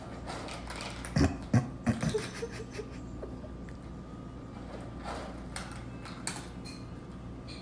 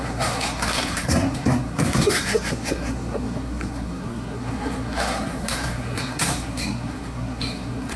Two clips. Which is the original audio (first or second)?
first